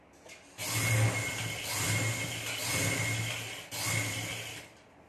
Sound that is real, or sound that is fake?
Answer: real